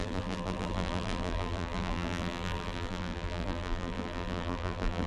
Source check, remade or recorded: remade